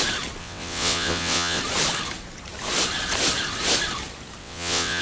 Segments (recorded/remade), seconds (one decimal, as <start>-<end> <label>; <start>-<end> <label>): 0.0-0.4 recorded; 0.4-1.6 remade; 1.6-4.4 recorded; 4.4-5.0 remade